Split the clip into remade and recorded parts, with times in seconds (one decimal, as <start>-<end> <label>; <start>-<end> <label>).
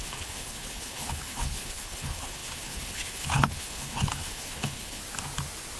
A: 0.0-5.0 remade; 5.0-5.8 recorded